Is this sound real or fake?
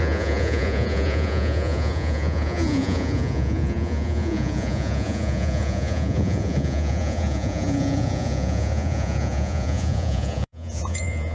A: fake